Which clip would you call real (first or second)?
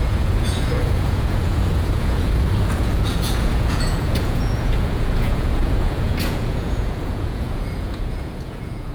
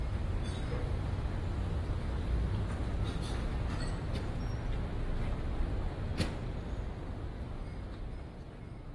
second